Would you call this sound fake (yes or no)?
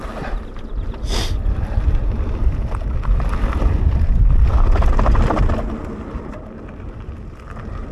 no